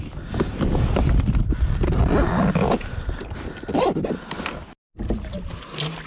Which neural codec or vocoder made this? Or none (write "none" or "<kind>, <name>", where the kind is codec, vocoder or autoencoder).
none